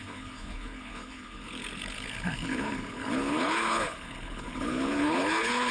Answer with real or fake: fake